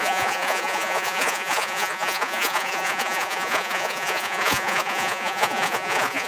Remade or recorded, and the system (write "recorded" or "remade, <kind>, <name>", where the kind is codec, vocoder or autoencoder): remade, vocoder, Vocos